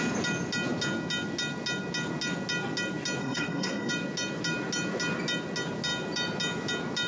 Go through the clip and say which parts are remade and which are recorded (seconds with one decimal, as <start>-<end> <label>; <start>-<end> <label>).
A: 0.0-3.2 recorded; 3.2-3.9 remade; 3.9-7.1 recorded